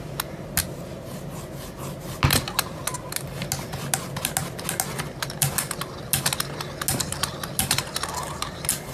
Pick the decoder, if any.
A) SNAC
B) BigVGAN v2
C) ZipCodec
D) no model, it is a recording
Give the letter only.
D